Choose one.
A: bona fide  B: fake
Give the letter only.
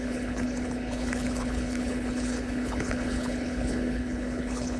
B